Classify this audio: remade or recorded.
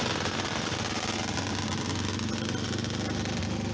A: recorded